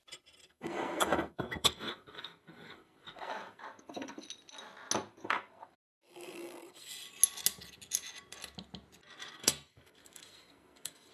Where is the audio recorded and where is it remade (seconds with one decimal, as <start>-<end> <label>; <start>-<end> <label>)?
0.0-0.4 recorded; 0.4-4.2 remade; 4.2-5.1 recorded; 5.1-6.9 remade; 6.9-9.3 recorded; 9.3-11.1 remade